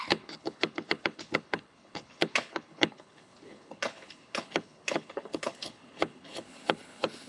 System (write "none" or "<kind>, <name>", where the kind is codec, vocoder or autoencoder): codec, HILCodec